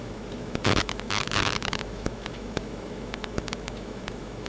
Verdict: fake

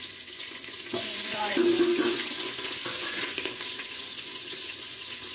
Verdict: fake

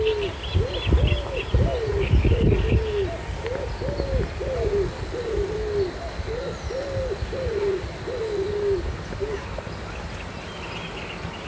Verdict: real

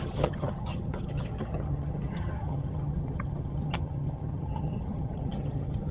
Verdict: fake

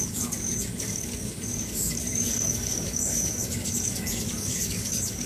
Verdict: fake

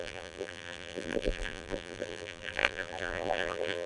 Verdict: fake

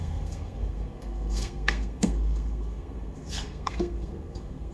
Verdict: fake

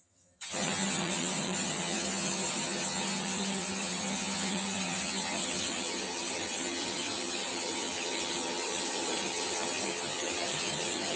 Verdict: fake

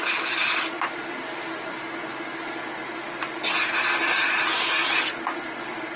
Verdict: real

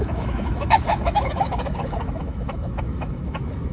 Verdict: fake